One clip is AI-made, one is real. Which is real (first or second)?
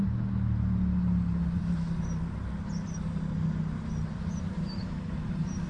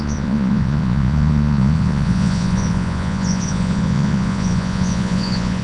first